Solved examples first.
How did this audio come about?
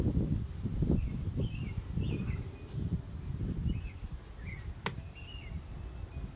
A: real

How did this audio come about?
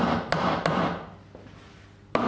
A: real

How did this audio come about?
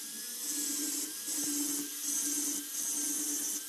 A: real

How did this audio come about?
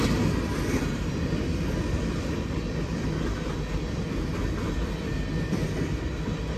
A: real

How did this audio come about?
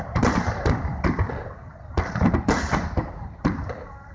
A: fake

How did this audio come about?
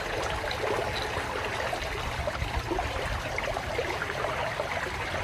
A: real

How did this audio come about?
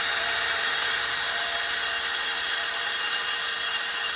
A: fake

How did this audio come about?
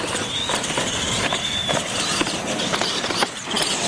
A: fake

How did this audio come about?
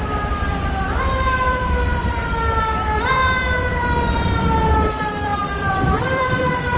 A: fake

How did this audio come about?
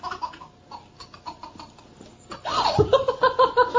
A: real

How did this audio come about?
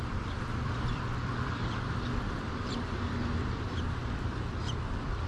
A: fake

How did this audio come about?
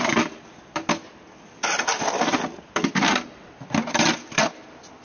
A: real